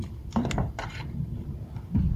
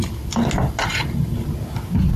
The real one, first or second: second